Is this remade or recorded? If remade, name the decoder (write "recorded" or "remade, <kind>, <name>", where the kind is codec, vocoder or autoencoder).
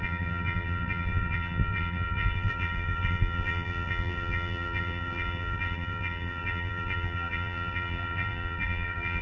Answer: remade, vocoder, BigVGAN v2